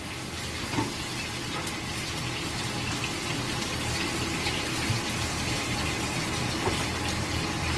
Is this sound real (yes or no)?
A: yes